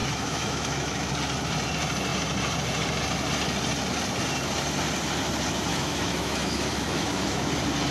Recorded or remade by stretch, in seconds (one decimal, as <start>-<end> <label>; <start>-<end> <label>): 0.0-1.1 remade; 1.1-5.7 recorded; 5.7-7.5 remade; 7.5-7.9 recorded